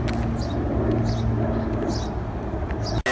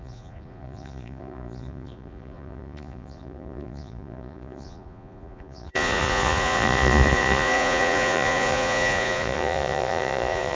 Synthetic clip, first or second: second